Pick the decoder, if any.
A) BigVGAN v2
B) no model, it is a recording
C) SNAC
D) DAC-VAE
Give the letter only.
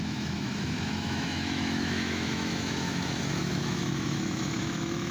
D